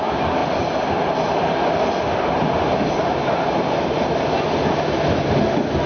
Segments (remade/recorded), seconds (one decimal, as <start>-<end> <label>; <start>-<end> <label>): 0.0-5.9 recorded